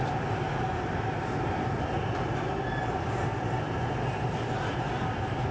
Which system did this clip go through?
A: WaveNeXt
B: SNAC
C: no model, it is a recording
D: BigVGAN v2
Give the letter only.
C